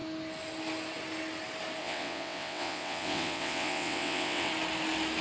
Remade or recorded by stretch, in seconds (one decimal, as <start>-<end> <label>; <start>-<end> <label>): 0.0-1.8 recorded; 1.8-4.5 remade; 4.5-5.2 recorded